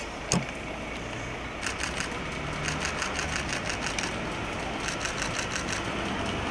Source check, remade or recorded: recorded